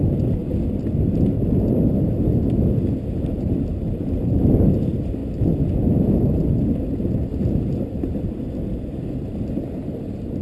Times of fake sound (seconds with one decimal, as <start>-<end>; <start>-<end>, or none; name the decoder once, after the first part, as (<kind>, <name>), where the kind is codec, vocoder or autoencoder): none